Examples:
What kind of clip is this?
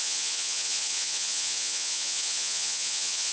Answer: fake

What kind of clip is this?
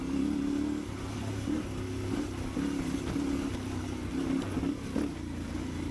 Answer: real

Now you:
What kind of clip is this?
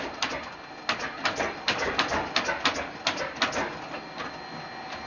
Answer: real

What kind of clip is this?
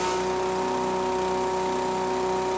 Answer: real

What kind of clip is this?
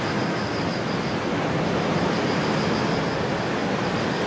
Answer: real